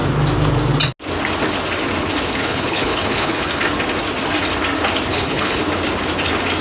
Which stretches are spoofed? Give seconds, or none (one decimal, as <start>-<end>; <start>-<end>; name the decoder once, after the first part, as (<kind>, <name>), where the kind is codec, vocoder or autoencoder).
2.4-3.6 (codec, HILCodec); 5.1-5.6